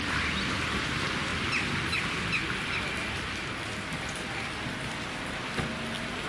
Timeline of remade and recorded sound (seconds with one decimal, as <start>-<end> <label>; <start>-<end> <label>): 0.0-6.3 recorded